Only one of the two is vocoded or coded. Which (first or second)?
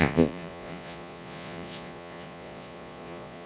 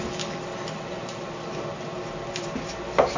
first